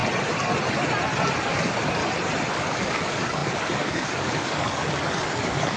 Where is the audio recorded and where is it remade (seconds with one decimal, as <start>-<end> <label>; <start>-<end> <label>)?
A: 0.0-1.4 recorded; 1.4-2.0 remade; 2.0-2.5 recorded; 2.5-5.8 remade